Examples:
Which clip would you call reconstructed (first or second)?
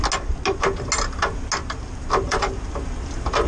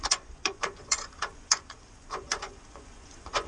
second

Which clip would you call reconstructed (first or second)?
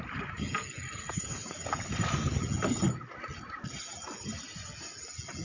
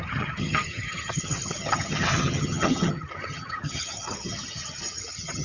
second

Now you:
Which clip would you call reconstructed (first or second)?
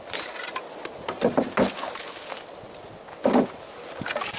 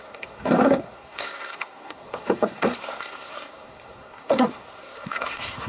second